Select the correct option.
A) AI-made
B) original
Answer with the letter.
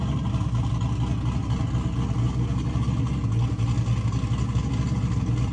B